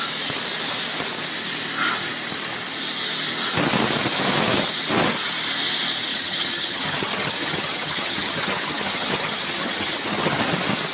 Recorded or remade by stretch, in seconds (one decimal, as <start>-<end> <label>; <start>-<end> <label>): 0.0-6.1 recorded; 6.1-10.4 remade; 10.4-10.9 recorded